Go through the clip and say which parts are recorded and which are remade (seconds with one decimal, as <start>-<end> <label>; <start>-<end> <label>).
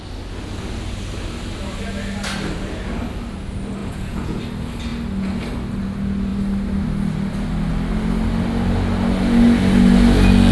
0.0-3.8 recorded; 3.8-4.4 remade; 4.4-10.5 recorded